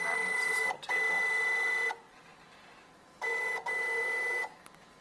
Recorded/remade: recorded